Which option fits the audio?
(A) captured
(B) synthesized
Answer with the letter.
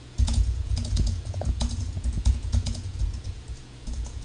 B